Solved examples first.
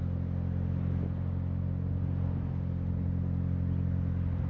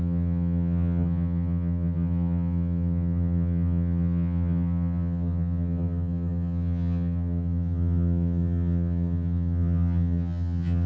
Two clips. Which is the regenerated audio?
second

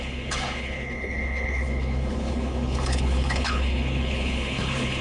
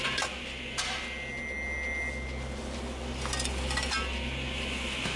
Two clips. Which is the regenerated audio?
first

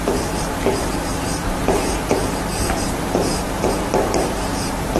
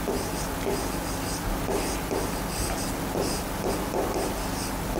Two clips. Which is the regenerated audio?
first